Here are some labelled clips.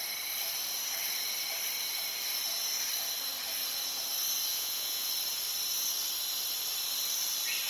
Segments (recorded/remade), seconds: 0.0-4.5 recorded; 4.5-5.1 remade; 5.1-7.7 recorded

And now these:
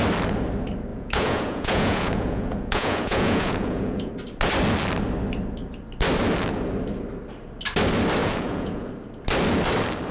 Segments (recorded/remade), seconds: 0.0-0.9 recorded; 0.9-4.1 remade; 4.1-8.2 recorded; 8.2-8.9 remade; 8.9-10.1 recorded